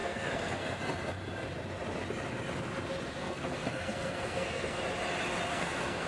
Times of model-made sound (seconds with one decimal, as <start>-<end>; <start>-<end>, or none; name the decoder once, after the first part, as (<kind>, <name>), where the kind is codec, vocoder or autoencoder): 0.0-0.8 (codec, SNAC); 3.2-4.8; 5.5-6.1